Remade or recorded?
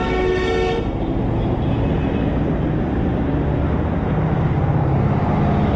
recorded